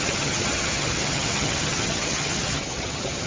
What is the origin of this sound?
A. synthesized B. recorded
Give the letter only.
A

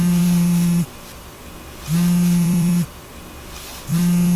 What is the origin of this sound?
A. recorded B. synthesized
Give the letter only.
B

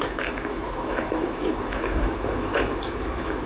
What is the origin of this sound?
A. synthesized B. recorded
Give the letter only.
A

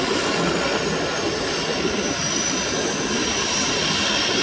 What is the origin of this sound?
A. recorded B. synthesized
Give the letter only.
A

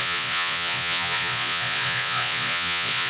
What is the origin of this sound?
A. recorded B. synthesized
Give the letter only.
B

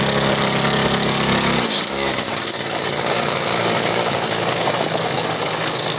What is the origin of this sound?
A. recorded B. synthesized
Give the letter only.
B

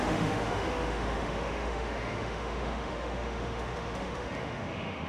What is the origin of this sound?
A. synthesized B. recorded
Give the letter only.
A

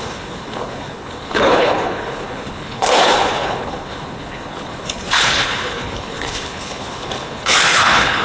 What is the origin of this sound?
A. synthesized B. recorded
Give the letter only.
A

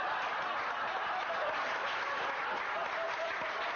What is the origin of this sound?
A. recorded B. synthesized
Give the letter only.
A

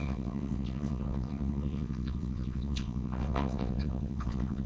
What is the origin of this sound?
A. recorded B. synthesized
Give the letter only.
B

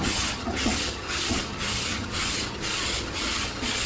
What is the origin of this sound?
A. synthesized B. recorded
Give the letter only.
A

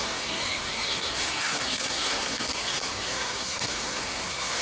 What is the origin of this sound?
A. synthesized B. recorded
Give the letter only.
A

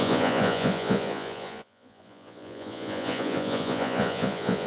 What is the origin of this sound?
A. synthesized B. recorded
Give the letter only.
A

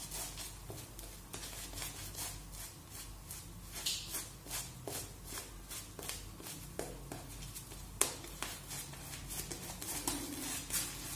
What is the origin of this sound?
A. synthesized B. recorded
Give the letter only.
B